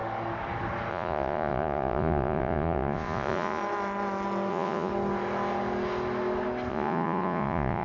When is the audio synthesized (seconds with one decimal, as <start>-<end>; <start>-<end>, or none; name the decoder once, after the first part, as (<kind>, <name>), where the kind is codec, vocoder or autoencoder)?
0.9-3.6 (vocoder, Vocos); 4.5-4.9; 6.7-7.8